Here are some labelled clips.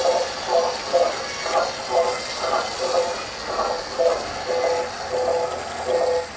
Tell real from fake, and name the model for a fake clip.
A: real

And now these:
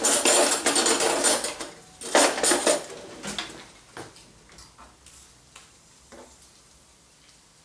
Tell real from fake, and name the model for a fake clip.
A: real